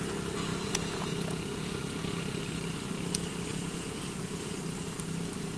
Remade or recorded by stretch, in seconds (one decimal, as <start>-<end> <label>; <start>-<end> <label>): 0.0-0.5 recorded; 0.5-2.4 remade; 2.4-3.5 recorded; 3.5-4.6 remade; 4.6-5.6 recorded